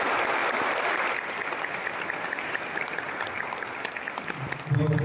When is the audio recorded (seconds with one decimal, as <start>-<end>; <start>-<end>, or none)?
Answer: 0.0-5.0